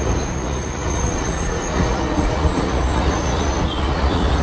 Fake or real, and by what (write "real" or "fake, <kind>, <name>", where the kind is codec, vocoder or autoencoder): fake, vocoder, Vocos